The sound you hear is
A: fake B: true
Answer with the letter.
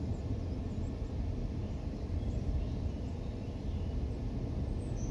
B